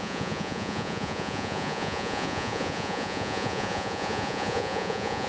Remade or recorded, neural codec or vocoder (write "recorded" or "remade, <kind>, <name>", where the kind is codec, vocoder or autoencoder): remade, vocoder, Vocos